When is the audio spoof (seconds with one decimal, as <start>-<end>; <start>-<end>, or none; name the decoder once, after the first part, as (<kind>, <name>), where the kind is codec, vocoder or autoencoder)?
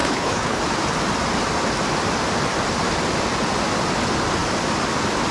0.0-0.6 (codec, HILCodec)